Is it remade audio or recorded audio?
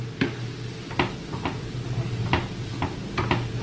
remade